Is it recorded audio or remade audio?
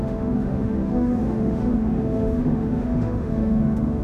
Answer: remade